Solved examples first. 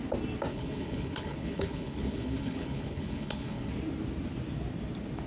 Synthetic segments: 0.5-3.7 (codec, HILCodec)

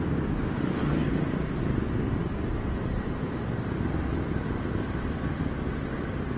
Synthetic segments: none

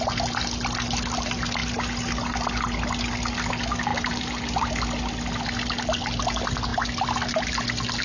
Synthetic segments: 3.9-4.7 (vocoder, BigVGAN v2)

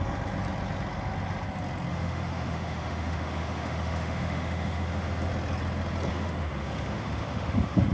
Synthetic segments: 1.9-5.3 (autoencoder, DAC-VAE); 6.1-7.9

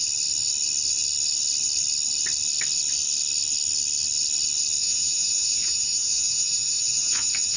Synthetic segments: 4.8-7.6 (vocoder, Vocos)